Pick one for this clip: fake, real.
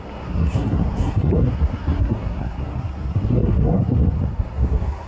fake